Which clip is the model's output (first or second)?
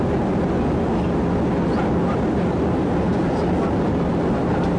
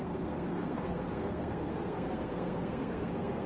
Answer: second